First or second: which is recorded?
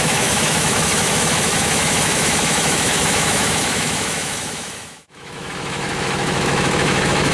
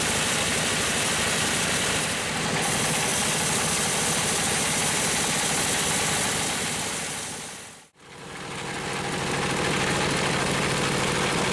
second